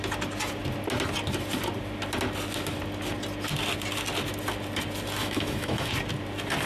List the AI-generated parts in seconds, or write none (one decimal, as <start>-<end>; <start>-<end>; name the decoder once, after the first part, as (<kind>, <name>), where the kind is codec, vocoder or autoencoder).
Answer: 5.2-5.9 (autoencoder, DAC-VAE)